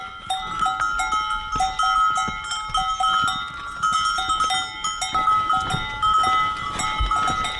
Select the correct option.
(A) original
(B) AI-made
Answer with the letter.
A